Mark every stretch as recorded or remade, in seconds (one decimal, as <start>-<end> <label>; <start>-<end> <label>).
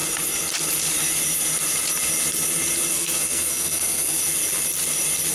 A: 0.0-2.9 recorded; 2.9-4.2 remade; 4.2-5.3 recorded